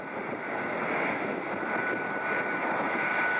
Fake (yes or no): no